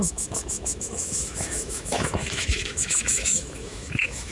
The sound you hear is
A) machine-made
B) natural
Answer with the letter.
A